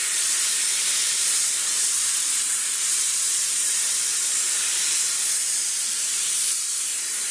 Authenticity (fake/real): fake